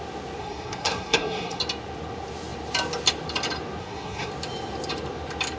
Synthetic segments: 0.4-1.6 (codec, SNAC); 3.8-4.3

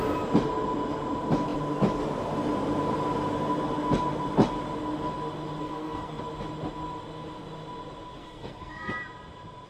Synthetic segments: 5.6-6.2 (codec, SNAC); 8.2-8.9

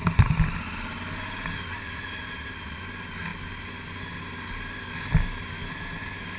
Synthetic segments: none

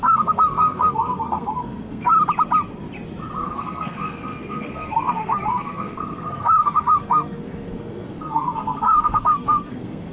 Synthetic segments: 0.0-2.1 (codec, SNAC); 3.4-10.1

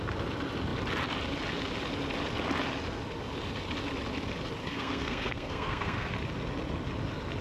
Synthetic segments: 4.6-6.1 (codec, SNAC)

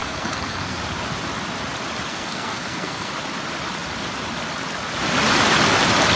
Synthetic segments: 0.0-0.8 (codec, SNAC); 2.1-3.1

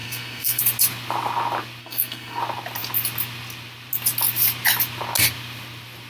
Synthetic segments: 0.0-0.6 (codec, SNAC); 1.8-2.4